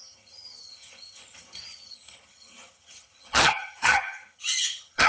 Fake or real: fake